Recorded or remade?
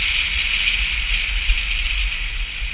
recorded